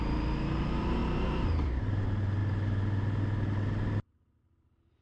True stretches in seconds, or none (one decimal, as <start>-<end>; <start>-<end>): 0.0-5.0